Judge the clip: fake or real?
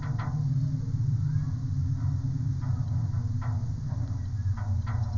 real